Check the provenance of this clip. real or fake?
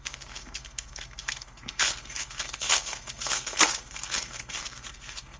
fake